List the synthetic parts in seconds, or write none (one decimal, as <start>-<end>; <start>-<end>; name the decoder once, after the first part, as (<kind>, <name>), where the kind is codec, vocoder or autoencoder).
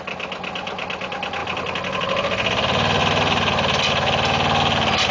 none